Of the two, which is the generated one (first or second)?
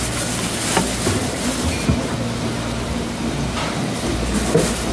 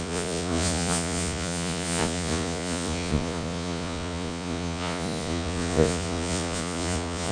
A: second